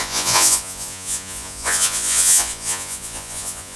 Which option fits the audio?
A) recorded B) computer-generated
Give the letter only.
B